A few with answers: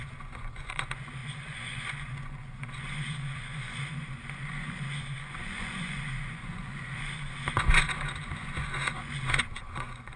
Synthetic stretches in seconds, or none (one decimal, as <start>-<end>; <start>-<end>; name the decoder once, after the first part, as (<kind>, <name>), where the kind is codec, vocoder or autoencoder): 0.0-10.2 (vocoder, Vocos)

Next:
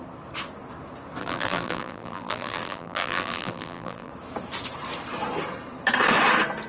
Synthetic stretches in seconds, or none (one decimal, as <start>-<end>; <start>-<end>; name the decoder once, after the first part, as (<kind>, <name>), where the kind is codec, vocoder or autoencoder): 1.2-4.1 (vocoder, BigVGAN v2)

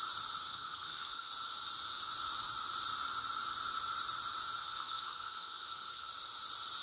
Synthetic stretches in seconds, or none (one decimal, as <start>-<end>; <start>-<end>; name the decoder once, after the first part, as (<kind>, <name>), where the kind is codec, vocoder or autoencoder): 0.4-1.3 (codec, SNAC); 4.6-6.1

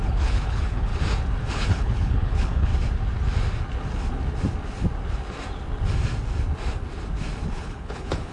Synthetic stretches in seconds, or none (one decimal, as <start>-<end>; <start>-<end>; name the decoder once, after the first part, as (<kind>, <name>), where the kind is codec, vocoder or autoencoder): 0.0-0.9 (codec, HILCodec); 1.5-2.7; 7.5-8.3